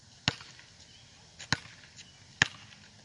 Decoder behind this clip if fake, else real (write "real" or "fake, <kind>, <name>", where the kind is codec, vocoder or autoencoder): real